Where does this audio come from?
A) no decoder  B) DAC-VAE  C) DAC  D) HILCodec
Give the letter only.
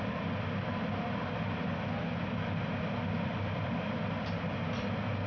A